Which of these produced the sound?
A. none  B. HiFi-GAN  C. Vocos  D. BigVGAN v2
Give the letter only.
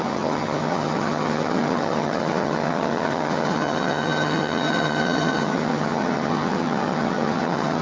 B